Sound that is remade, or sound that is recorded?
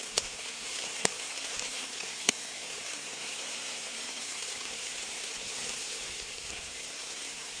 remade